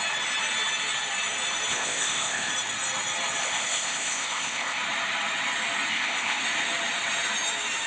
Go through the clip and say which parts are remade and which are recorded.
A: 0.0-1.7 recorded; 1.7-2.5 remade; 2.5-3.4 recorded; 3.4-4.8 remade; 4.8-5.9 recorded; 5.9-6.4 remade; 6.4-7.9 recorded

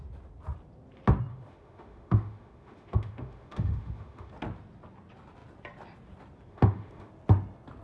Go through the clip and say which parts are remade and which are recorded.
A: 0.0-1.3 recorded; 1.3-4.3 remade; 4.3-6.5 recorded; 6.5-7.1 remade; 7.1-7.8 recorded

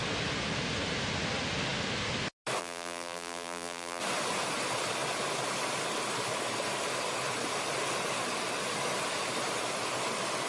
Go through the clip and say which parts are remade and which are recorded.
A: 0.0-2.6 recorded; 2.6-4.0 remade; 4.0-10.5 recorded

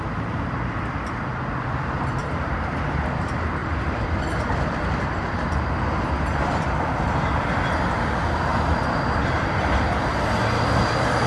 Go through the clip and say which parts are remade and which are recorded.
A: 0.0-2.2 recorded; 2.2-3.2 remade; 3.2-3.6 recorded; 3.6-7.2 remade; 7.2-8.5 recorded; 8.5-9.7 remade; 9.7-11.3 recorded

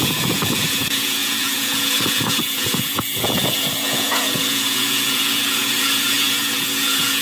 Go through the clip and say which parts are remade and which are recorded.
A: 0.0-7.2 remade